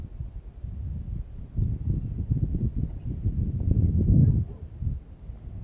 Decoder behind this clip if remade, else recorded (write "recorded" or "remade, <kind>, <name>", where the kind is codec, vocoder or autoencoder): recorded